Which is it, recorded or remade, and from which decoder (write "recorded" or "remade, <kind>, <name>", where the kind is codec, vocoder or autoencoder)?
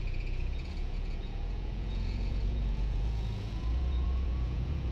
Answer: remade, vocoder, Vocos